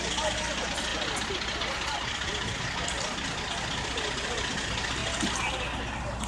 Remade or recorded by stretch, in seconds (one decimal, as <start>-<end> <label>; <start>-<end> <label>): 0.0-6.3 recorded